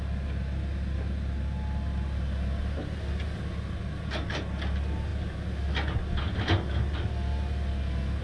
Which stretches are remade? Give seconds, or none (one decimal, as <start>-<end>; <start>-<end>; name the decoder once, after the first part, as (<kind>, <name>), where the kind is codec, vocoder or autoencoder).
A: none